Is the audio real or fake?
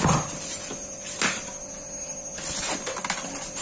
real